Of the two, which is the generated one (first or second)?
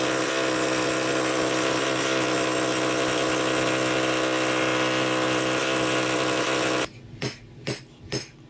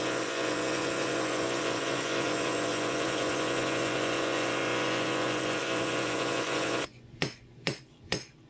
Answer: second